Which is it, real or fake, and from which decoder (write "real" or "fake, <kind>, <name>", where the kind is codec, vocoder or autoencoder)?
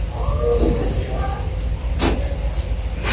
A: real